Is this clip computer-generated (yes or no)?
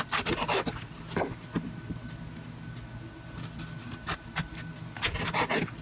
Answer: no